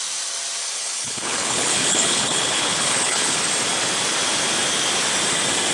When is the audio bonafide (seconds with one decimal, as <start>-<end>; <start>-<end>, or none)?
0.0-0.6; 3.4-5.7